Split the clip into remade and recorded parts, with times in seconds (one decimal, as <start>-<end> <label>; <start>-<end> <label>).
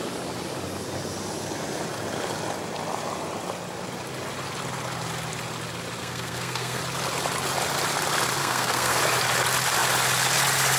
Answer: 0.0-6.0 recorded; 6.0-6.8 remade; 6.8-8.4 recorded; 8.4-9.0 remade; 9.0-10.8 recorded